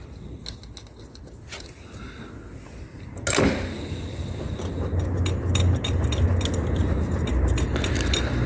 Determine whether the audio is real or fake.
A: real